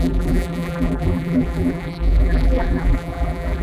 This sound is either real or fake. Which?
fake